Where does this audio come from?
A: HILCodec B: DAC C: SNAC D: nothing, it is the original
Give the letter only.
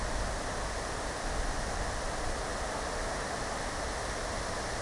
D